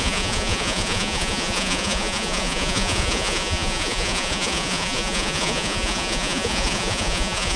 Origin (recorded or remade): remade